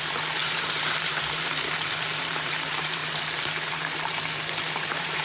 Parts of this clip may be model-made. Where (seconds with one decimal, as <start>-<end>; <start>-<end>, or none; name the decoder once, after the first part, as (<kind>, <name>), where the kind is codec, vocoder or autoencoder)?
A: 0.0-3.0 (vocoder, BigVGAN v2); 3.7-5.2